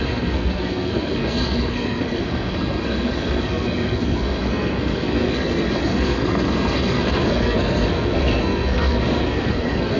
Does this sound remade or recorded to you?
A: remade